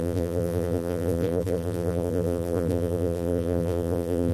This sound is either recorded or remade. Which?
remade